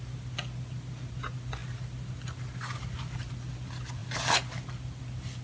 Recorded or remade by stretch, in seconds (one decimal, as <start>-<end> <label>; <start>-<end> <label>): 0.0-5.4 recorded